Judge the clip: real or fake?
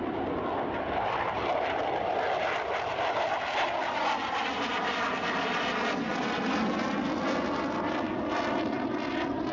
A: real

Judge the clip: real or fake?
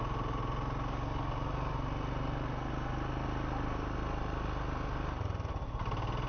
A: real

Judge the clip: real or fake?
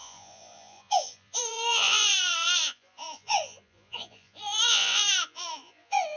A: fake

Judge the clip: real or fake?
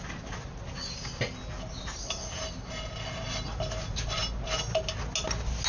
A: real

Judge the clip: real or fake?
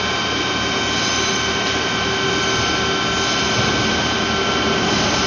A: real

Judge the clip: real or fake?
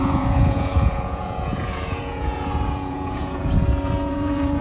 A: fake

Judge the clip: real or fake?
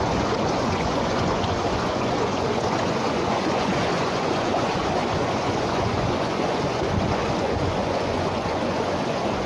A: fake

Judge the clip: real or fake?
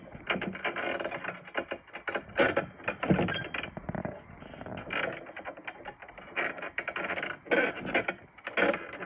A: real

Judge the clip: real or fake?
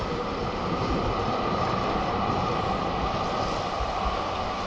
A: real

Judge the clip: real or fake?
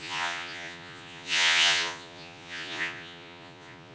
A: fake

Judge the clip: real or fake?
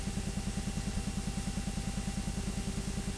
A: real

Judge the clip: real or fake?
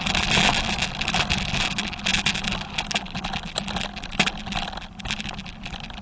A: real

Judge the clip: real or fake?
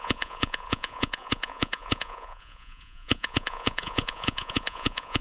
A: fake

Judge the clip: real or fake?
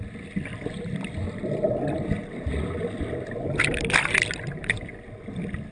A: real